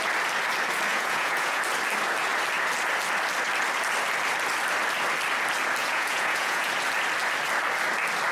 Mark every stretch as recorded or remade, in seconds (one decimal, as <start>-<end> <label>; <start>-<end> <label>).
0.0-0.9 recorded; 0.9-1.6 remade; 1.6-5.8 recorded; 5.8-6.7 remade; 6.7-8.3 recorded